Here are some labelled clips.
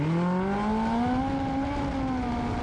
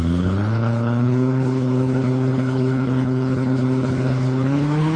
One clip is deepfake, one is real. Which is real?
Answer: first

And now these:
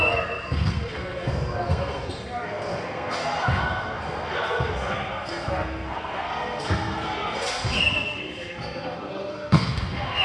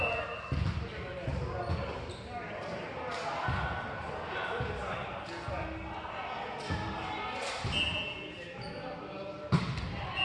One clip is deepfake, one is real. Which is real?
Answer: second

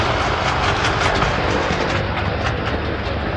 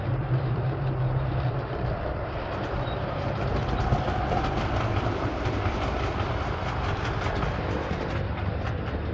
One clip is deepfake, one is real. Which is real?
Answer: first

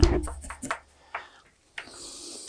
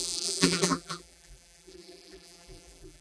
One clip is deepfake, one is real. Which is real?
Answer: first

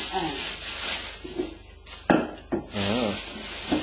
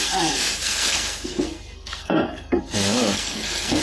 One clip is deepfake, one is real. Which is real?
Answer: first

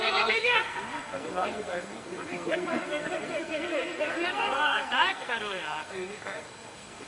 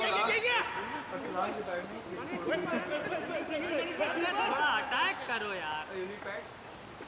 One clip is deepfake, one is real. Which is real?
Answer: second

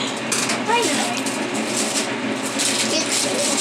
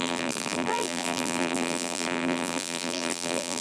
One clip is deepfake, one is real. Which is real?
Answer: first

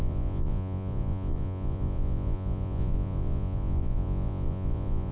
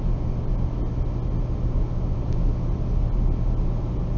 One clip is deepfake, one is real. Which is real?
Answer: second